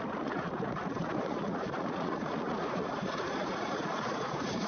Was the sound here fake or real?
fake